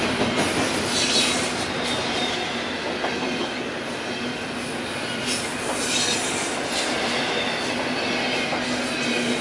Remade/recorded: recorded